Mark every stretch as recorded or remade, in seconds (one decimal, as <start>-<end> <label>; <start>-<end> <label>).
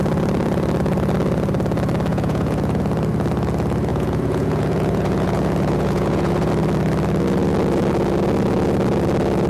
0.0-2.1 recorded; 2.1-2.8 remade; 2.8-3.9 recorded; 3.9-6.5 remade; 6.5-9.5 recorded